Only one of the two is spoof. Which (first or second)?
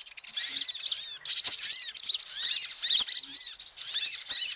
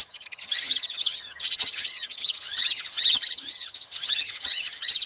second